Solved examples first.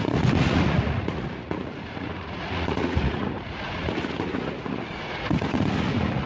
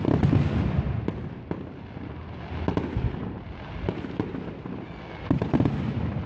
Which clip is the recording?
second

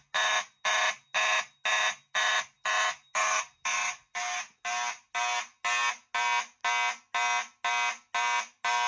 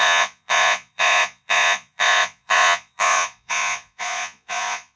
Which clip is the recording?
first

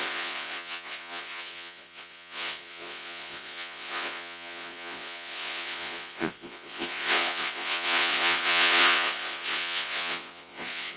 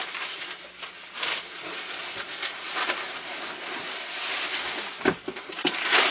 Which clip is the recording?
second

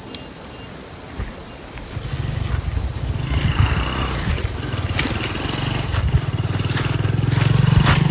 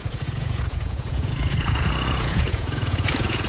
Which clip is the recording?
first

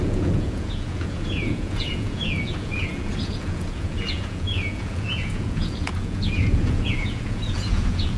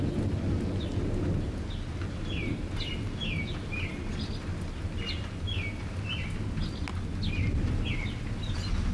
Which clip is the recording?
second